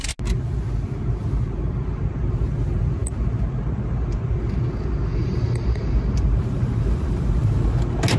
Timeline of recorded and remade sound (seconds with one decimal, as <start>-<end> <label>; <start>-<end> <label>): 0.0-5.2 recorded; 5.2-7.3 remade; 7.3-8.2 recorded